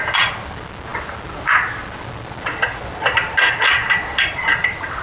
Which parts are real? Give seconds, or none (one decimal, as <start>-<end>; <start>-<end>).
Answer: 0.0-5.0